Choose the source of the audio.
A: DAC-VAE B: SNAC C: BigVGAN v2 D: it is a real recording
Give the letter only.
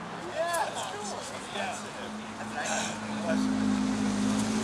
D